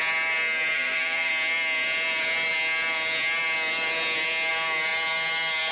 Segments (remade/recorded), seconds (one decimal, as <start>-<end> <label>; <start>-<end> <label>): 0.0-0.7 recorded; 0.7-1.3 remade; 1.3-5.7 recorded